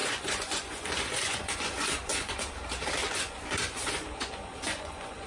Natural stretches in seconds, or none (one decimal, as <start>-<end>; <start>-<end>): 2.5-3.0